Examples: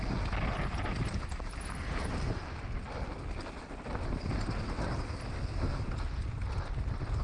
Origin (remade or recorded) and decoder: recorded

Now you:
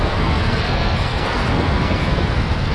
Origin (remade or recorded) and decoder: remade, codec, SNAC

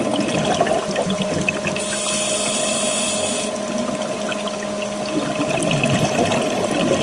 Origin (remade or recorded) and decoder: recorded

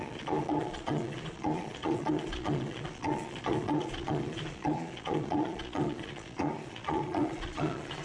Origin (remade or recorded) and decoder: remade, vocoder, Vocos